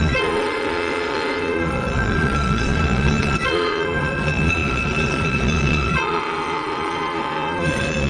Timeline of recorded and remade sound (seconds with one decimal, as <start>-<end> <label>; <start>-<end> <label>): 0.0-8.1 remade